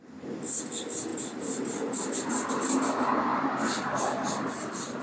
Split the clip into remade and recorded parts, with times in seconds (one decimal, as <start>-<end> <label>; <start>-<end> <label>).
0.0-3.3 recorded; 3.3-3.9 remade; 3.9-5.0 recorded